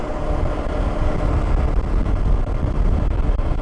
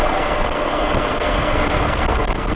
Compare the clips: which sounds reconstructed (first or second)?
second